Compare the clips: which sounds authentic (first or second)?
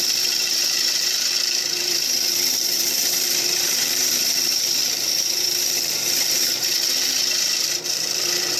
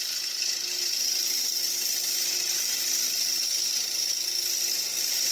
second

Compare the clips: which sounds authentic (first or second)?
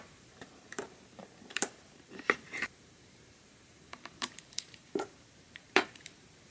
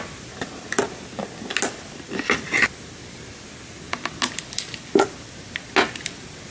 second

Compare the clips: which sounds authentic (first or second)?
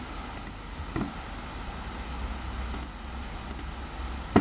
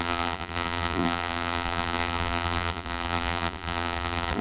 first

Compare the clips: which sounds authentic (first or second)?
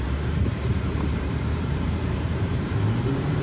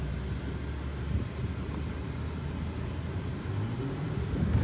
second